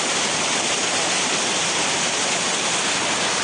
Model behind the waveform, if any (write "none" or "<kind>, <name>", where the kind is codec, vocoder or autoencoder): vocoder, BigVGAN v2